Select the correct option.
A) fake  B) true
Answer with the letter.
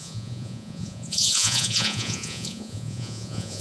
A